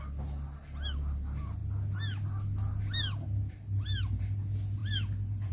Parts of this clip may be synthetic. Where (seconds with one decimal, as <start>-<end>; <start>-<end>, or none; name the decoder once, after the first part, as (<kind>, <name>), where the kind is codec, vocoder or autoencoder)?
none